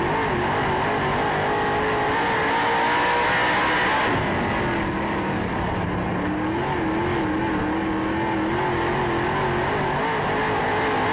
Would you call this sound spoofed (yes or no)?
no